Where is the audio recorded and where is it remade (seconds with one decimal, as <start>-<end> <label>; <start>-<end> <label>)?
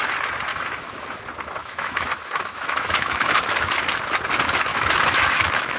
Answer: 0.0-0.5 recorded; 0.5-1.2 remade; 1.2-1.6 recorded; 1.6-3.8 remade; 3.8-4.7 recorded; 4.7-5.8 remade